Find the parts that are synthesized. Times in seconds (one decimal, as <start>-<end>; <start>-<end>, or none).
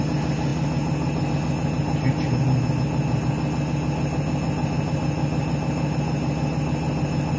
none